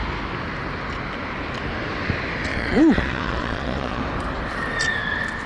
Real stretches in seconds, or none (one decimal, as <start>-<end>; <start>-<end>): 0.0-2.5; 4.0-5.5